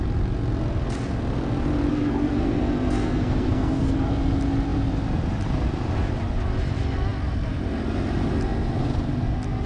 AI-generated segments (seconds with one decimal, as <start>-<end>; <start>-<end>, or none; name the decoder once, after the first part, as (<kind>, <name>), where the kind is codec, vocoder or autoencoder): 1.9-4.1 (codec, SNAC)